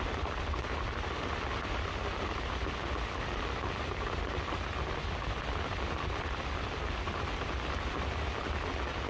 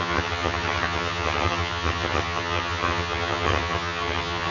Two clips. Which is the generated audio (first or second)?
second